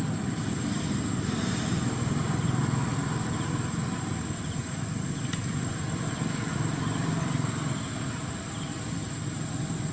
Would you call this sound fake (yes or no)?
no